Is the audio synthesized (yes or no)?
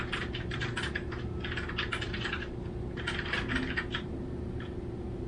no